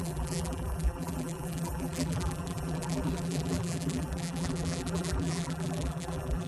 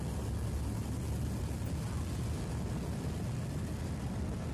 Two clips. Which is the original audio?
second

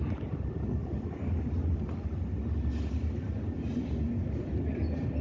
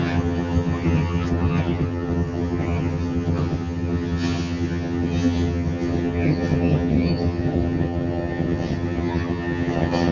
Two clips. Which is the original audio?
first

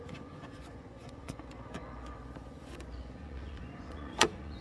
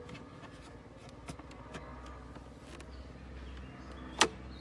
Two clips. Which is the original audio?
second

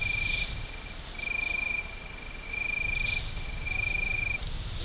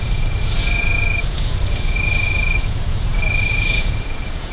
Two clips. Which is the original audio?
first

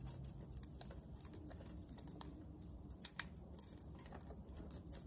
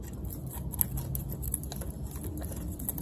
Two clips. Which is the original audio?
second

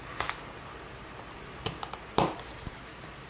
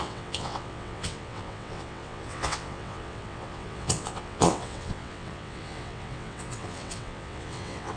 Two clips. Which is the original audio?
first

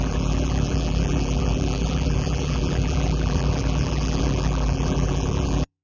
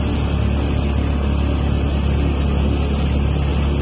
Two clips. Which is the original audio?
second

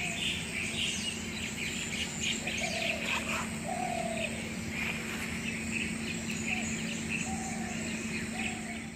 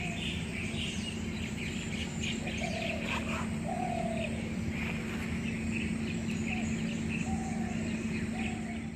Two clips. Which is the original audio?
first